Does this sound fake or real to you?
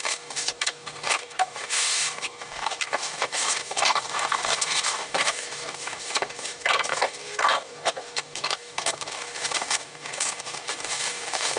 fake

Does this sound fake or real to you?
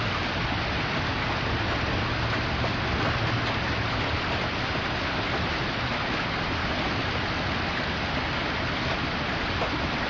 real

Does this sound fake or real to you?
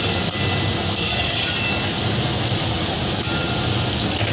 real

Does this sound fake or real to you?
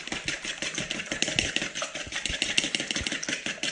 real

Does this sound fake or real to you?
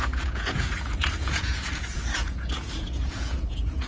fake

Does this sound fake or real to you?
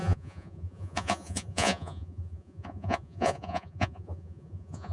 fake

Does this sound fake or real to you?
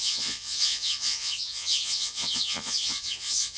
fake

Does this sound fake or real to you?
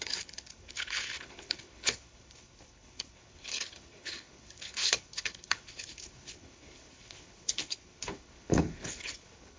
fake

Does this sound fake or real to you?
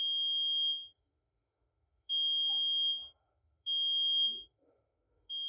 fake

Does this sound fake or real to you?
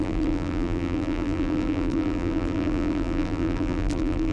fake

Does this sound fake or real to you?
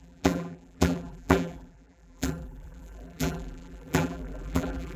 fake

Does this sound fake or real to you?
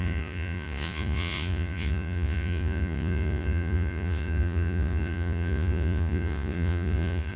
fake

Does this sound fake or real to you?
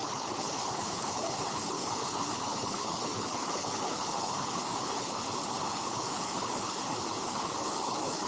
fake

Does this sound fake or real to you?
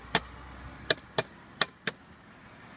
real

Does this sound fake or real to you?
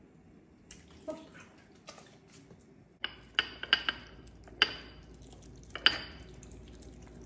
real